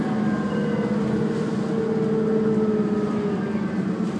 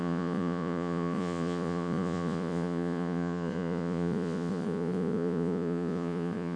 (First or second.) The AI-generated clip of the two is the second